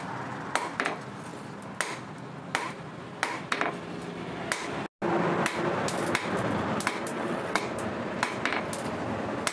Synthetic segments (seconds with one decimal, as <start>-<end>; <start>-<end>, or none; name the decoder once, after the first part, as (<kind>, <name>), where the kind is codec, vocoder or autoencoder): 7.1-7.6 (vocoder, WaveNeXt)